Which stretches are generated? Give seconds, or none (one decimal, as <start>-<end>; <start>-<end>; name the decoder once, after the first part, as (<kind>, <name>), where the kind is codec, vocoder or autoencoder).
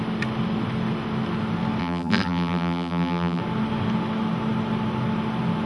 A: 1.8-3.4 (vocoder, BigVGAN v2)